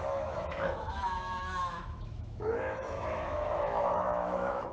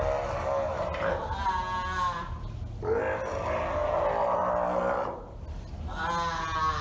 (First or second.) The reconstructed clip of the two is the first